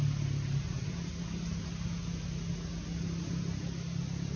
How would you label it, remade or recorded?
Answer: recorded